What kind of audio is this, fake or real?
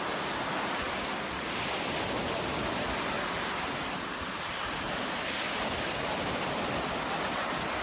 real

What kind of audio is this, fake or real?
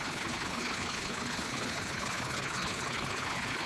fake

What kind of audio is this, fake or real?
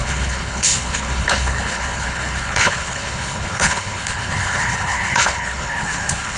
fake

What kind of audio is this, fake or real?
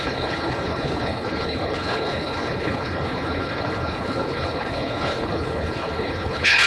fake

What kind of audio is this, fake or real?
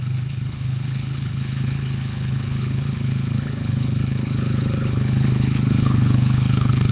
fake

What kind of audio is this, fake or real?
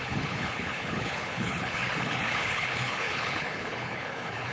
fake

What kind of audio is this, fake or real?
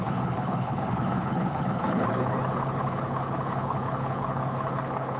fake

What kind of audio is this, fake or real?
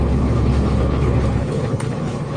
fake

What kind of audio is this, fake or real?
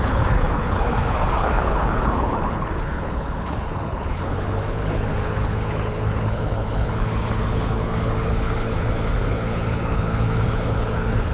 fake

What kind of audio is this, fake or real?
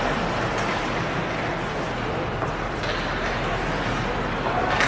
real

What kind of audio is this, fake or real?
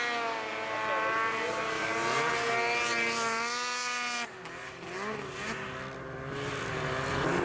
real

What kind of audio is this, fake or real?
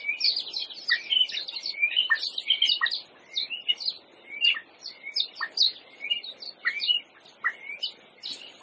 real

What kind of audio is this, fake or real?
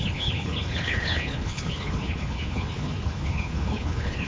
fake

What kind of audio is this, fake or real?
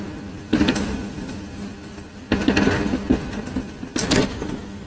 real